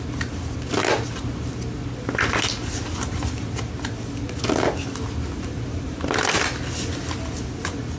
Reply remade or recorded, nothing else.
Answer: recorded